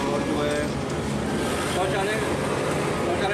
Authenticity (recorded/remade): recorded